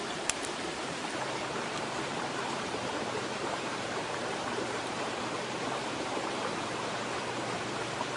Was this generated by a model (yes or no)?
yes